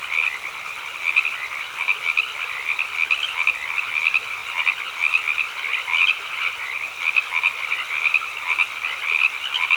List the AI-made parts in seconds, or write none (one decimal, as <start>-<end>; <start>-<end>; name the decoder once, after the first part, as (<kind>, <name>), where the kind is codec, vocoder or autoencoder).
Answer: 4.4-7.3 (vocoder, BigVGAN v2)